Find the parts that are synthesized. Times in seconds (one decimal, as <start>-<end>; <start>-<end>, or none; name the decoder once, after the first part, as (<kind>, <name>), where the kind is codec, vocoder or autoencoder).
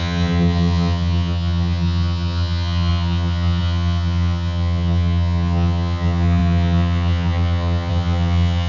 0.0-8.7 (vocoder, HiFi-GAN)